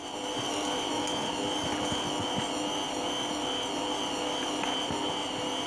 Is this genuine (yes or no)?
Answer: yes